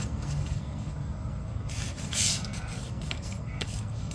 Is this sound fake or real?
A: fake